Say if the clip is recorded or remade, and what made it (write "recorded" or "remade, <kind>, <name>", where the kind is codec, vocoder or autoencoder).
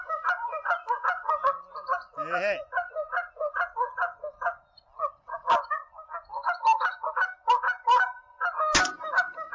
recorded